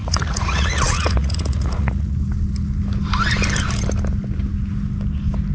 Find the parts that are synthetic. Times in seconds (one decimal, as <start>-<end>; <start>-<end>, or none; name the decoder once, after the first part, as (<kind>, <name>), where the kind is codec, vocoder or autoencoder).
0.0-2.1 (vocoder, Vocos)

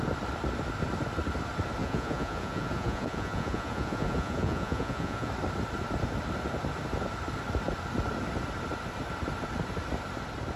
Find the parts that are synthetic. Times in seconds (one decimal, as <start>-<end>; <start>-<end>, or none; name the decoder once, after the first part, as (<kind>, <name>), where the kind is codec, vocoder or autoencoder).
1.8-5.3 (vocoder, Vocos)

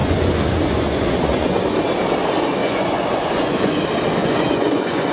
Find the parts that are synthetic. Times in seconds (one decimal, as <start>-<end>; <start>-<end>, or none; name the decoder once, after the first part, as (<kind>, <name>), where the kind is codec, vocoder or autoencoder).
0.0-1.6 (vocoder, Vocos); 2.6-3.8; 4.2-5.1